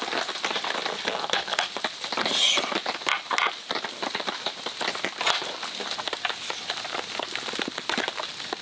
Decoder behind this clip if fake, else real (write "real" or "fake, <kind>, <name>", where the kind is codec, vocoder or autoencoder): real